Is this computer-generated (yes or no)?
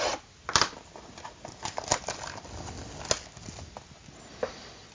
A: no